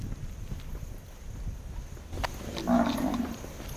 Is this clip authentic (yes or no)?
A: yes